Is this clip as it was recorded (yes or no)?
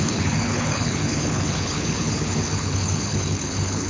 no